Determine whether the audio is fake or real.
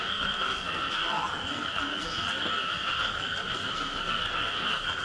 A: fake